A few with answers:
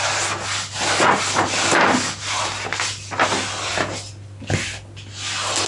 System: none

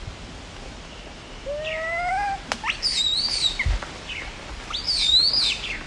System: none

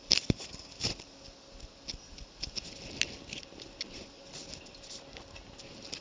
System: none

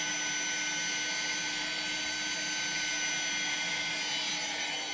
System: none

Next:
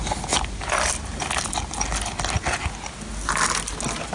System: none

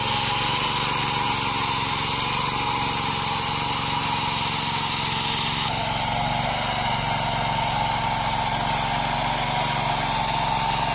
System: none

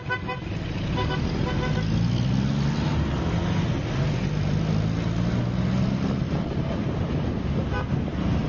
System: none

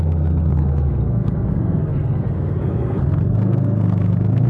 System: codec, SNAC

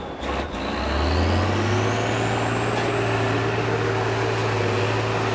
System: none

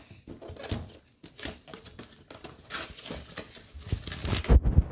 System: none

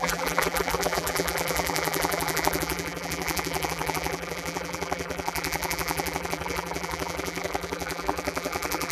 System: vocoder, BigVGAN v2